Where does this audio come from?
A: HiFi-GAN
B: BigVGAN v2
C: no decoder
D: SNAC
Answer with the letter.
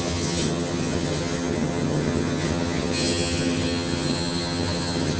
A